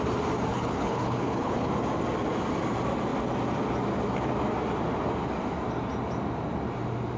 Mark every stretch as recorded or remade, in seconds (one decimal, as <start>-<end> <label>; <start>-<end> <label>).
0.0-0.5 recorded; 0.5-1.7 remade; 1.7-7.2 recorded